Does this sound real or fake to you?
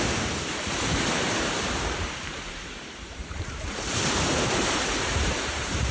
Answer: fake